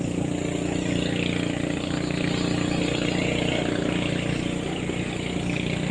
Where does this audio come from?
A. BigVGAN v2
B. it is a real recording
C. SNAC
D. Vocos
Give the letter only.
B